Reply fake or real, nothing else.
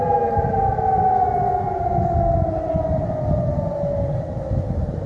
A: real